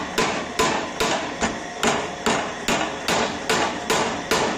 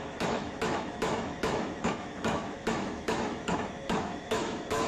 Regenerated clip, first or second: second